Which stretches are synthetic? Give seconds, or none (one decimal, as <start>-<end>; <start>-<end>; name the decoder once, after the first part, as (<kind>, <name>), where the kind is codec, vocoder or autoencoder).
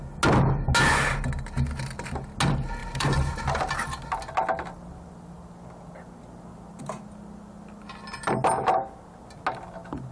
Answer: 2.8-3.4 (vocoder, BigVGAN v2)